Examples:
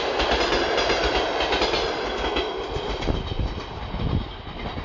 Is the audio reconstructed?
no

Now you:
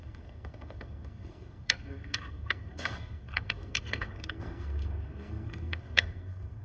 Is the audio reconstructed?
yes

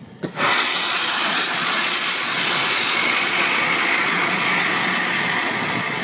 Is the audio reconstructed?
yes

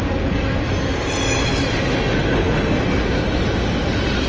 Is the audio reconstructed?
no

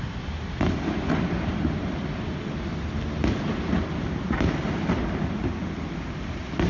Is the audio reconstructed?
no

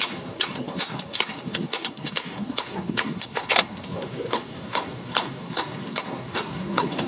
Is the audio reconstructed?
yes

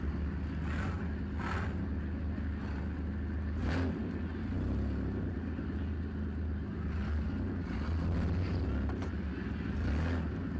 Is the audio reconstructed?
no